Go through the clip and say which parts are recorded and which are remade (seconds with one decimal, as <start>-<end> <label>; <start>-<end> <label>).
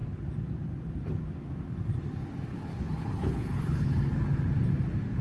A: 0.0-2.5 recorded; 2.5-4.2 remade; 4.2-5.2 recorded